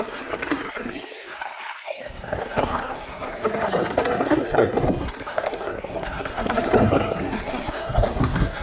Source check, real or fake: fake